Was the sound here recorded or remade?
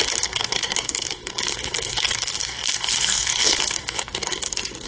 remade